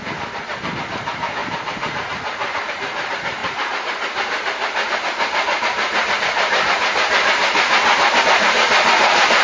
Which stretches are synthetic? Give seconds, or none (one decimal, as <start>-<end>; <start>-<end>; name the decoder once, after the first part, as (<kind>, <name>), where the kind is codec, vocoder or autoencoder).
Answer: 0.6-9.4 (vocoder, BigVGAN v2)